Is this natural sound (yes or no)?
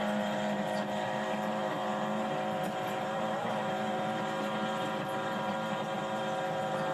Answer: no